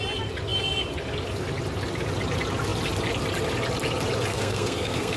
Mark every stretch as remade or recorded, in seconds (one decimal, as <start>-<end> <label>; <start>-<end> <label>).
0.0-4.3 recorded; 4.3-5.2 remade